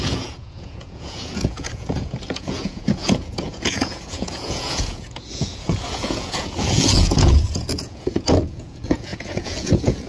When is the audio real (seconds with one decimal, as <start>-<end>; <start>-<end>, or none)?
none